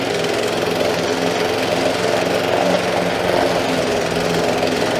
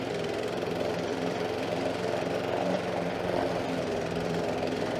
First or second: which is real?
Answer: first